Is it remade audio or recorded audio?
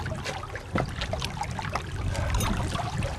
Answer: recorded